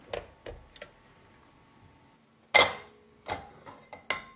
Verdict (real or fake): real